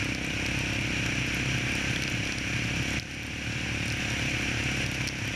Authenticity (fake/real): real